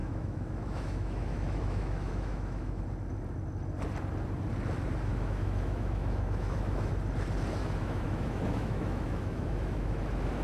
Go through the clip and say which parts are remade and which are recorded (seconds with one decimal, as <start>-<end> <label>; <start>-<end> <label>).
0.0-2.8 remade; 2.8-5.1 recorded; 5.1-6.9 remade; 6.9-7.6 recorded; 7.6-10.0 remade; 10.0-10.4 recorded